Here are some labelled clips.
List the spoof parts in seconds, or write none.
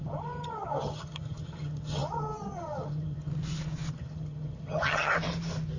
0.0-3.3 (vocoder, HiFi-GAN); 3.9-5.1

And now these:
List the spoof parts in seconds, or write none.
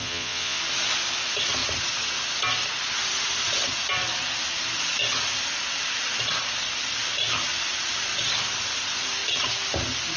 0.0-0.6 (vocoder, Vocos)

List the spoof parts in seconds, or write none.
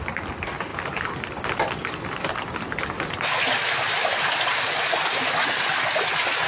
none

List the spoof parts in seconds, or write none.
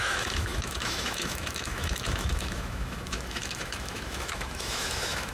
0.0-5.3 (autoencoder, DAC-VAE)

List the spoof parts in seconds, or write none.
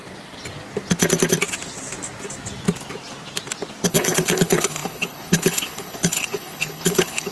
3.9-7.3 (codec, HILCodec)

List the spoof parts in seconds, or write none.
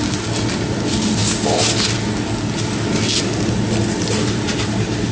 none